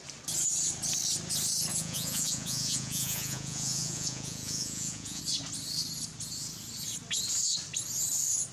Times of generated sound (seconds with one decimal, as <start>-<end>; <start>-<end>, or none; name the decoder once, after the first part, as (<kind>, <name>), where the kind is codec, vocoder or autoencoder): 1.7-5.2 (vocoder, Vocos)